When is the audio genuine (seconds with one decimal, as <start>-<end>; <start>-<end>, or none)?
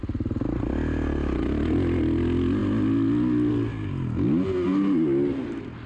0.0-5.9